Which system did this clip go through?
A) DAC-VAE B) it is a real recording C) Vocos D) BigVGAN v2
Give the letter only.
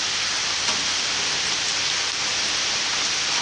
B